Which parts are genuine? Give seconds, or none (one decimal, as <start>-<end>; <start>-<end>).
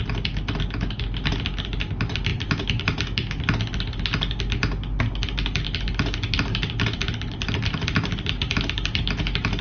0.0-9.6